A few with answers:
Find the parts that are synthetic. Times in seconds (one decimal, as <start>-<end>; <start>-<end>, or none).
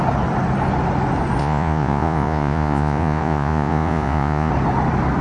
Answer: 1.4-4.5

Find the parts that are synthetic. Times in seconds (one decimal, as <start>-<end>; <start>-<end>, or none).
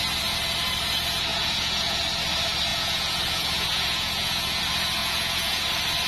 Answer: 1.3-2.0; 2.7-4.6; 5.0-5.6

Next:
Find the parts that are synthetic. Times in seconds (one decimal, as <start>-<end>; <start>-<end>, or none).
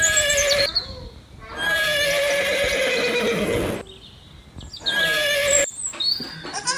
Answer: none